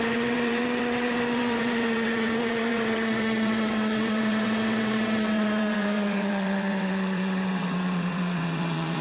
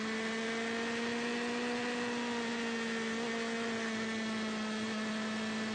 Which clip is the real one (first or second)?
second